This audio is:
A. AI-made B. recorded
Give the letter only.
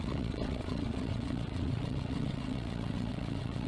A